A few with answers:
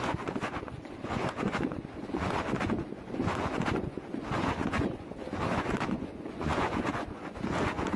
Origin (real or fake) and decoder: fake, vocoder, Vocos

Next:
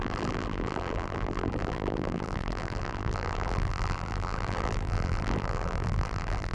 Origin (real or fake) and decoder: fake, vocoder, BigVGAN v2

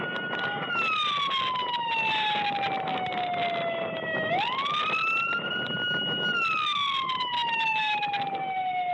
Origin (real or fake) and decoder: real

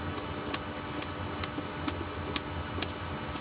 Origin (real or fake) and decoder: real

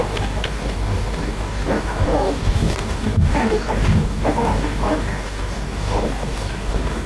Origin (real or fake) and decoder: fake, codec, DAC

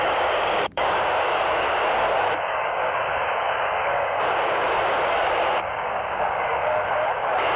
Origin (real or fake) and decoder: fake, codec, DAC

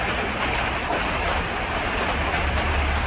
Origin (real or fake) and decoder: real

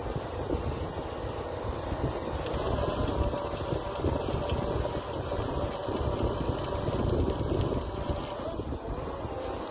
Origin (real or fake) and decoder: real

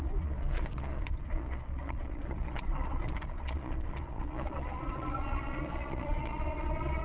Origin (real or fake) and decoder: fake, vocoder, Vocos